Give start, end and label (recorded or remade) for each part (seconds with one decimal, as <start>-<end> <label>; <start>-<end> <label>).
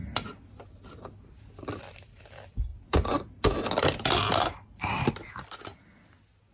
0.0-6.5 recorded